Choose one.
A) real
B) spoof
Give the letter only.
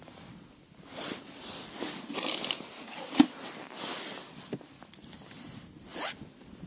A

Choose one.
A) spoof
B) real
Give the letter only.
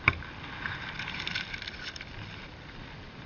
B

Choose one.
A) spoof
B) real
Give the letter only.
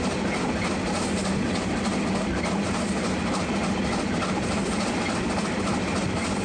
B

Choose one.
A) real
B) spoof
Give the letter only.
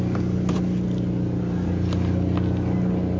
A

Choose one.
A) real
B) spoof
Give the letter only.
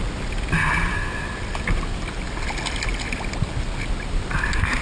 A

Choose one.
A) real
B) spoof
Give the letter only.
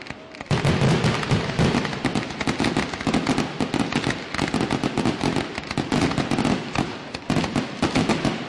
A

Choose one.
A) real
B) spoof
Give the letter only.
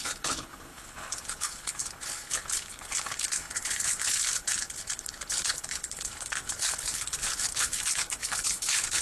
B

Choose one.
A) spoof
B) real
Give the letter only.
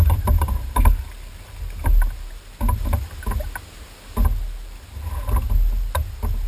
B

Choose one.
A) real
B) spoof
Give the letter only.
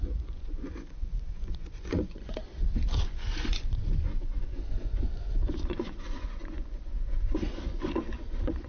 B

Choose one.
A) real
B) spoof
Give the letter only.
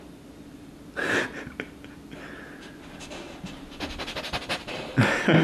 A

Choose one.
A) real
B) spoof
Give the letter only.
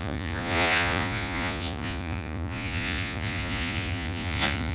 B